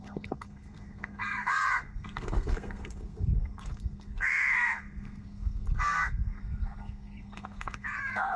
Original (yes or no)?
no